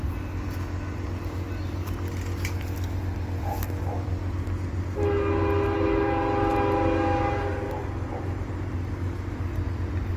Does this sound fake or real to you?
real